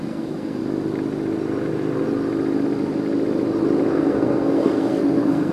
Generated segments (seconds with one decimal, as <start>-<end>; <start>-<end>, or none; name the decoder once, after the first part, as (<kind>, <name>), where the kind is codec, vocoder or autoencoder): 0.0-0.6 (codec, SNAC); 3.9-5.5